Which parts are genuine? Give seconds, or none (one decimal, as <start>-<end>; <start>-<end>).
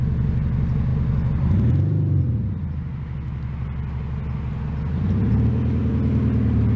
0.0-6.8